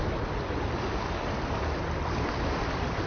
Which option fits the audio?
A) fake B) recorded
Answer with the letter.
B